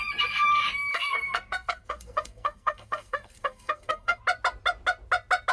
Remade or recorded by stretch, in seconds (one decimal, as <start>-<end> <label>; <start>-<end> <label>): 0.0-0.9 recorded; 0.9-4.2 remade; 4.2-5.5 recorded